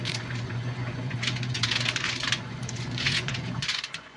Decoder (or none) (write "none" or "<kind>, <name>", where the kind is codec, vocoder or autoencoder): vocoder, Vocos